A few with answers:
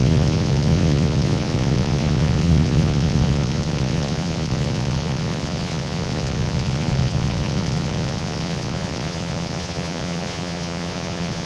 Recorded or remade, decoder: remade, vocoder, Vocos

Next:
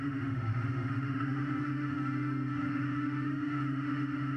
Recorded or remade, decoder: remade, autoencoder, DAC-VAE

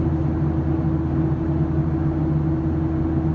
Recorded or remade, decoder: recorded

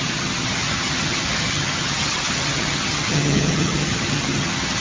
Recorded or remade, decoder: remade, vocoder, HiFi-GAN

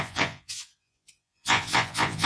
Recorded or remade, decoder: remade, vocoder, Vocos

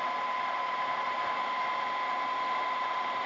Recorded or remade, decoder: recorded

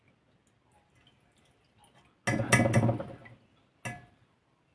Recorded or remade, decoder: recorded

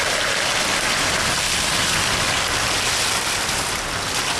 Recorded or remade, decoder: recorded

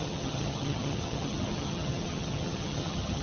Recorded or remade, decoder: remade, vocoder, HiFi-GAN